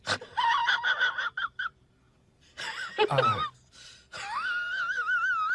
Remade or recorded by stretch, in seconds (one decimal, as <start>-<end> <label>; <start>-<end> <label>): 0.0-0.6 recorded; 0.6-2.9 remade; 2.9-3.4 recorded; 3.4-4.0 remade; 4.0-5.5 recorded